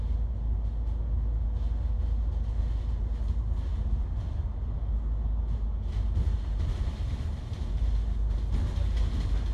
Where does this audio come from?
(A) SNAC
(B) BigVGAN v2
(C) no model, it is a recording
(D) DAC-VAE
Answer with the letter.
C